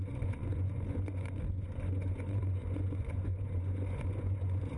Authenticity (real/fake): fake